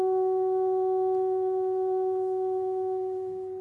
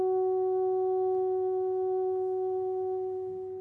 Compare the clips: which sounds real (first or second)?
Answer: second